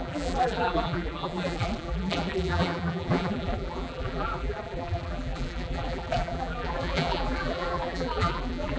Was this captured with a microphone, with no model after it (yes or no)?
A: no